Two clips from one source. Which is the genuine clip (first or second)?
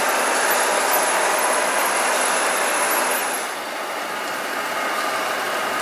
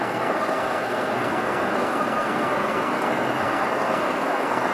first